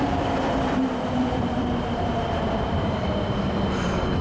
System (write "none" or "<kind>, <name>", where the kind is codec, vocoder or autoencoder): vocoder, BigVGAN v2